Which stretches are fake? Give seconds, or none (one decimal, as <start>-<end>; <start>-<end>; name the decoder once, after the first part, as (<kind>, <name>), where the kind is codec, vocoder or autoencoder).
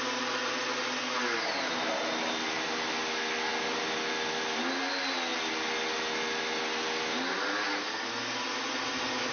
none